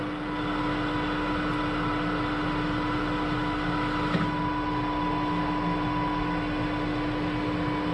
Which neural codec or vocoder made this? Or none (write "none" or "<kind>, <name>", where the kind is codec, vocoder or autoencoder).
none